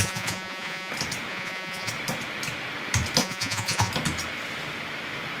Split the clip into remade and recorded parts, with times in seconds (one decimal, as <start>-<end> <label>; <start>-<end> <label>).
0.0-0.9 remade; 0.9-1.3 recorded; 1.3-1.9 remade; 1.9-3.2 recorded; 3.2-3.9 remade; 3.9-5.4 recorded